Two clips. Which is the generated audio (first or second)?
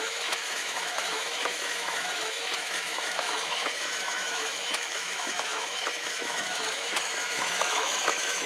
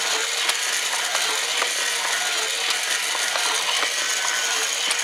first